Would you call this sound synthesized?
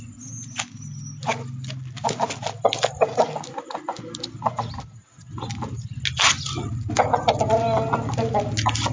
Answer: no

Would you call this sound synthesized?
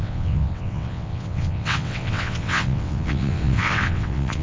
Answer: yes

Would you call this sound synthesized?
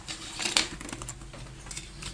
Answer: no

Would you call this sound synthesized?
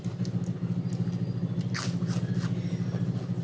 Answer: no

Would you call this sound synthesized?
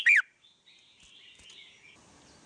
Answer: no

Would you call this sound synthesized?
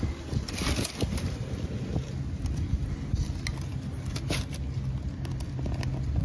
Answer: no